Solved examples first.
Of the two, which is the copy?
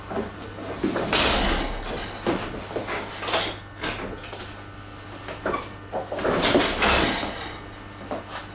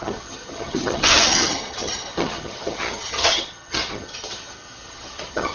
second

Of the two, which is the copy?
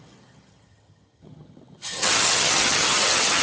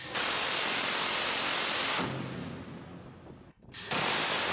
first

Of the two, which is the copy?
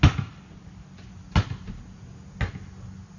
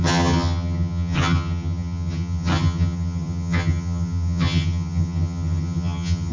second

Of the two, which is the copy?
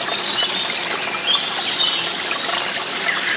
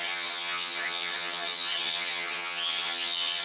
second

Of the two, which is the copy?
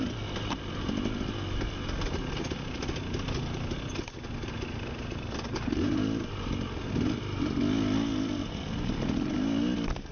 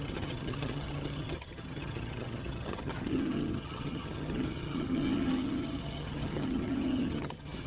second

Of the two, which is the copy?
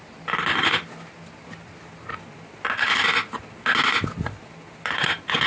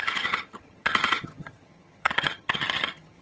second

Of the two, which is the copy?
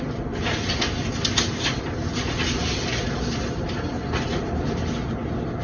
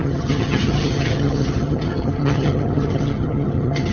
second